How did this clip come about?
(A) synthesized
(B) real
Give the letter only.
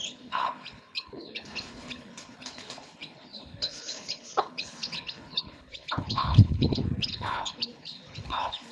A